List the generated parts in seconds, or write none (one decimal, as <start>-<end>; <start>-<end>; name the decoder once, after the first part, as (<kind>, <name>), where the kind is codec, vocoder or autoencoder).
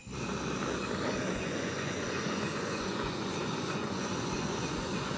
1.3-5.2 (vocoder, Vocos)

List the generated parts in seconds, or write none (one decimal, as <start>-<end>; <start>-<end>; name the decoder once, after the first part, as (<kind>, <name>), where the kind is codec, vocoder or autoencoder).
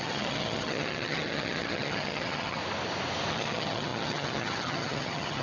0.0-2.6 (vocoder, HiFi-GAN); 3.3-5.4